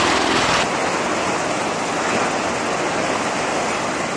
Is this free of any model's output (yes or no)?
yes